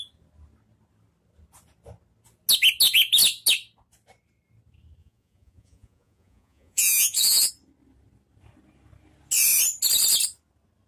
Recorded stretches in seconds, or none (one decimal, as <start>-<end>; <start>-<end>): 0.0-5.0; 7.5-10.9